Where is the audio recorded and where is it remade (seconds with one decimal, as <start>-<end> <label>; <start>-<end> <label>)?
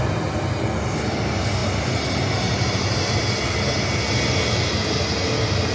0.0-5.7 recorded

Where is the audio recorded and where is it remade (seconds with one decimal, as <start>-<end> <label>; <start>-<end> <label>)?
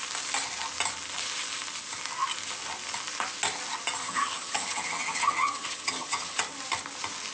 0.0-4.0 recorded; 4.0-6.4 remade; 6.4-7.3 recorded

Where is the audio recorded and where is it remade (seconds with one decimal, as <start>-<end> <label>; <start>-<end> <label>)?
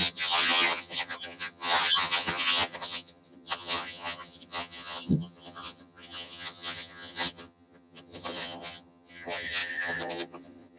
0.0-10.8 remade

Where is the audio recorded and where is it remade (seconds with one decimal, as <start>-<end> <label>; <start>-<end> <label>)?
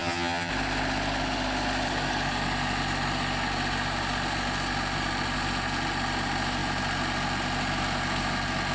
0.0-0.5 remade; 0.5-8.7 recorded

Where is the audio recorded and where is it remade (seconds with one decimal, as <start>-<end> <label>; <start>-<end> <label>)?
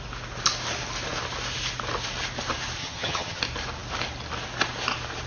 0.0-2.8 recorded; 2.8-3.4 remade; 3.4-5.3 recorded